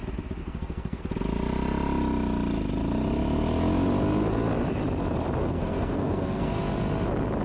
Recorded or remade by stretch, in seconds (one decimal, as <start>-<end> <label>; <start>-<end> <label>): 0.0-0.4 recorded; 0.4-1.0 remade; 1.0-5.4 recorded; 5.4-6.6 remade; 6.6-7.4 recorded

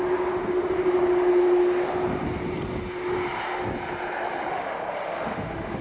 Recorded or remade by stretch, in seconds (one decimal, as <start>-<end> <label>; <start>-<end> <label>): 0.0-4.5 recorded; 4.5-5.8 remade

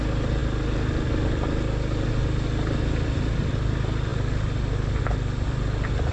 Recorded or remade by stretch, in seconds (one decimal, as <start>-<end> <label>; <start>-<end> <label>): 0.0-6.1 recorded

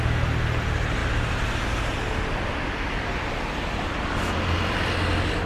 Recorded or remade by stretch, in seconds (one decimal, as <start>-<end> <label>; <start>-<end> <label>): 0.0-5.5 recorded